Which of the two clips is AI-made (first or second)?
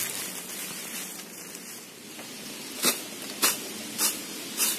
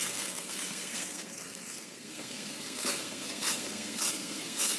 second